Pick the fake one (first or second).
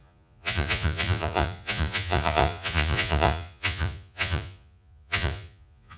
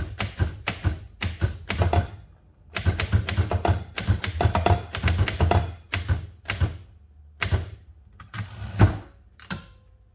first